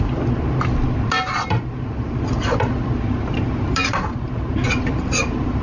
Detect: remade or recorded recorded